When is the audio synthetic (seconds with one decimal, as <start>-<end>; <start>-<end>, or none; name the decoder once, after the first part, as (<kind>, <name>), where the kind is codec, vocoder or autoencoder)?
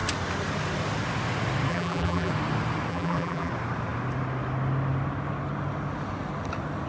1.7-2.3 (vocoder, BigVGAN v2); 2.9-3.5